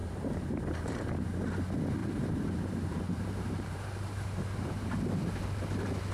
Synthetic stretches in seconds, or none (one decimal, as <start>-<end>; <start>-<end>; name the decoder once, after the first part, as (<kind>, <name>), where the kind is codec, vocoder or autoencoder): 0.0-1.0 (vocoder, BigVGAN v2); 2.0-5.4